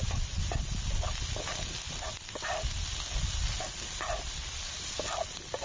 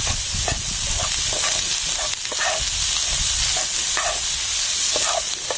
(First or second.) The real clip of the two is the second